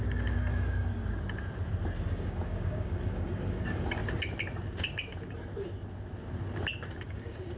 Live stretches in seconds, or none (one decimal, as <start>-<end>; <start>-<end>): 1.0-2.0; 4.0-7.0